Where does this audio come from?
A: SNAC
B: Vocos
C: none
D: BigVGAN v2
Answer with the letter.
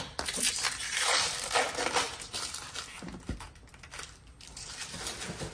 D